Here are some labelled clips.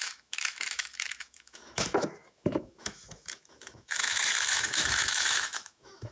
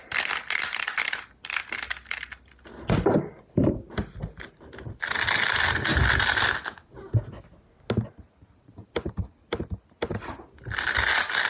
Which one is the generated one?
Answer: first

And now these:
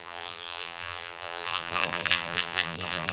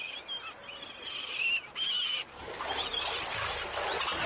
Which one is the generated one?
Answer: first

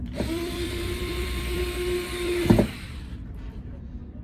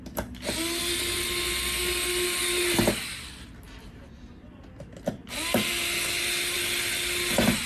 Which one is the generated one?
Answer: first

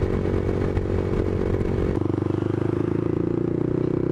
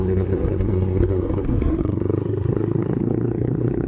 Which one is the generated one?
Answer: second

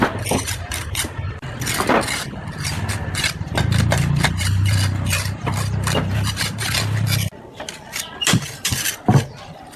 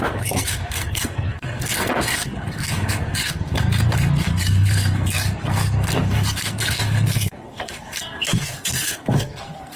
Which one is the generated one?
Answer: second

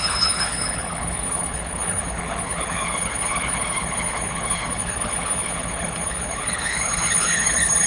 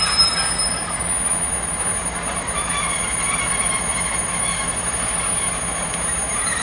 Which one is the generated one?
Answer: first